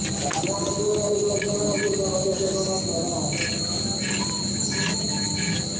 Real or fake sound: real